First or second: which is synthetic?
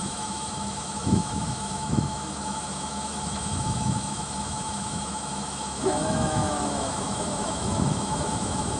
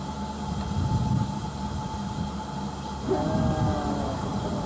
first